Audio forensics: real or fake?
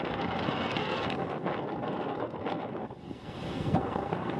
fake